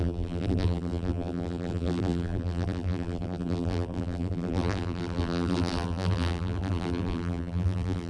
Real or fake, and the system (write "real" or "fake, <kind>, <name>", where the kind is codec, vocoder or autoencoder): fake, vocoder, BigVGAN v2